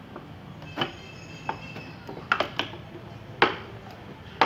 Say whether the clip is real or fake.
real